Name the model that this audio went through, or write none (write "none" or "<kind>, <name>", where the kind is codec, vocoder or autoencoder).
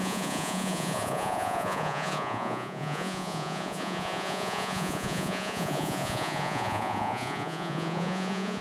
vocoder, Vocos